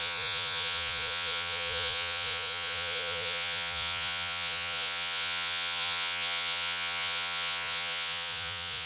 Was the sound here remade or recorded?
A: remade